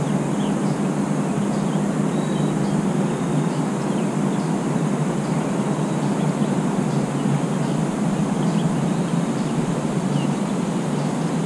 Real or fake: real